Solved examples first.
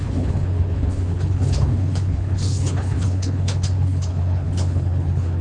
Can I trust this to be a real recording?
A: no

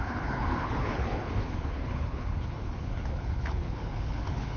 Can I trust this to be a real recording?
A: no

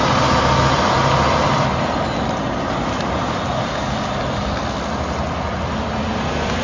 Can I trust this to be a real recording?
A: yes